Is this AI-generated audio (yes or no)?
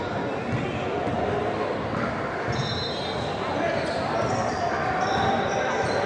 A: no